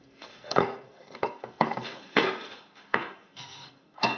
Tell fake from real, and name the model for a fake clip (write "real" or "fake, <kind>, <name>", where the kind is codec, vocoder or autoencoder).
fake, codec, SNAC